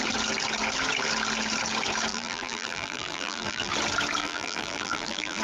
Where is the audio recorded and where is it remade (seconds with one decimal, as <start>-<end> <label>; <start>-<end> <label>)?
0.0-2.1 recorded; 2.1-3.7 remade; 3.7-4.2 recorded; 4.2-5.4 remade